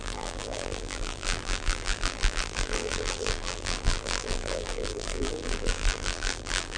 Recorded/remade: remade